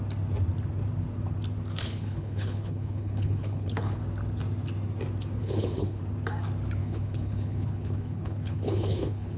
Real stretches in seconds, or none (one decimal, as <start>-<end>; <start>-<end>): 0.0-1.8; 4.0-5.4; 6.0-6.8